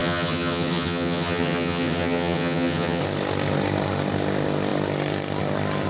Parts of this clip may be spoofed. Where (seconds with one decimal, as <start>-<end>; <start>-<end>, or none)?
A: 0.0-3.0